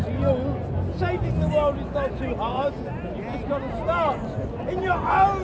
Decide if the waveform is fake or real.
real